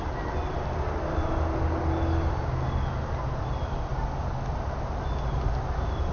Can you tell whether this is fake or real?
real